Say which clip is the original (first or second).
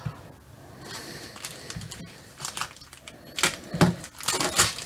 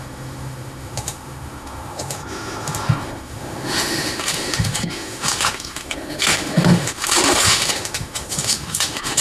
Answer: first